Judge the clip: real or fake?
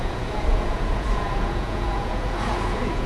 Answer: fake